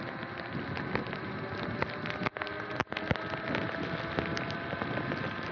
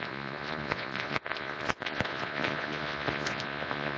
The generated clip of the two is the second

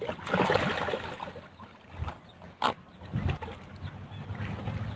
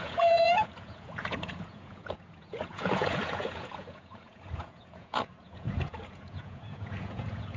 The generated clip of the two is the second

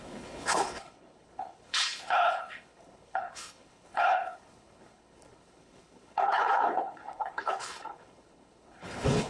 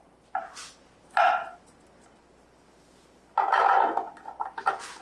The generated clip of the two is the first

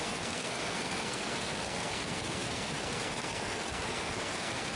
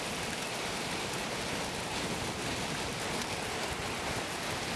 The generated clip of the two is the first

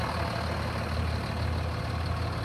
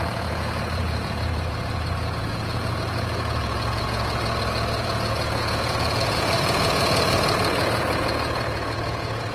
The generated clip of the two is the second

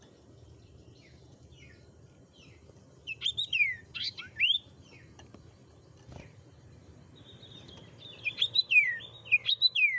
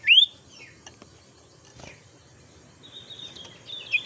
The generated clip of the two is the first